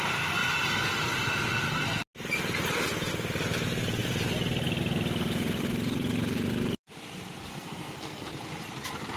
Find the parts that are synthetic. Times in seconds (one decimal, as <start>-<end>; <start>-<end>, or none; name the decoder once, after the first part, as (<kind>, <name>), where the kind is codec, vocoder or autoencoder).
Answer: 7.5-8.3 (codec, SNAC)

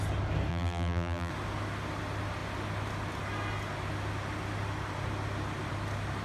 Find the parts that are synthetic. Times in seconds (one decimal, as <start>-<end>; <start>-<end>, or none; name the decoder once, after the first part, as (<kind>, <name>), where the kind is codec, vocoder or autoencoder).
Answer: 0.5-1.3 (vocoder, BigVGAN v2)

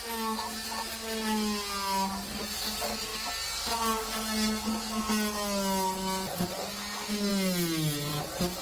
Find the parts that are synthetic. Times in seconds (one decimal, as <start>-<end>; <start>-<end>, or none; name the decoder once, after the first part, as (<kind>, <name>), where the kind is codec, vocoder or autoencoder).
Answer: none

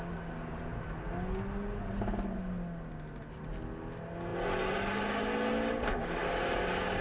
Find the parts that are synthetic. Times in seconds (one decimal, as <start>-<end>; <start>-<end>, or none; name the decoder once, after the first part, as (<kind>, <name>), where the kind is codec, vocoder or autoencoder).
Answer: none

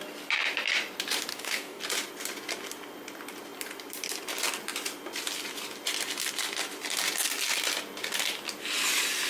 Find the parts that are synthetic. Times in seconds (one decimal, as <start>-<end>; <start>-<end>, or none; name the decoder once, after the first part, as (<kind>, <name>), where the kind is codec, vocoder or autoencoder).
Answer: 1.3-1.8 (codec, DAC)

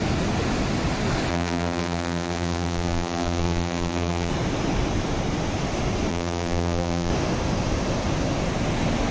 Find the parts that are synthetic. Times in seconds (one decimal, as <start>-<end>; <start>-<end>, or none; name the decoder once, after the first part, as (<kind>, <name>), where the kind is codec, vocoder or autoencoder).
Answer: 1.3-4.3 (vocoder, BigVGAN v2); 6.1-7.1